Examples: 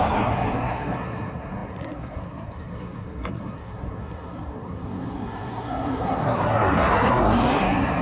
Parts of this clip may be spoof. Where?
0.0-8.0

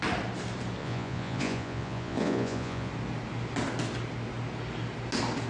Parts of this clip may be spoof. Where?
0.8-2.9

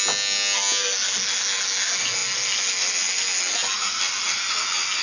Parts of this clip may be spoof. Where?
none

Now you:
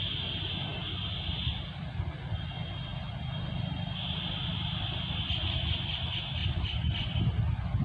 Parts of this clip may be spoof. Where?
0.7-1.7; 6.4-7.2